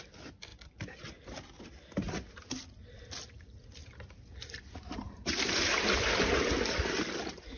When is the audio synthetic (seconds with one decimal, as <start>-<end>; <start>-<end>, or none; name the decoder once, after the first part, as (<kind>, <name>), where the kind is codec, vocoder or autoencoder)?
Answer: 3.8-6.8 (vocoder, BigVGAN v2)